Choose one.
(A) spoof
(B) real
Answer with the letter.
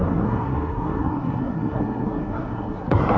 A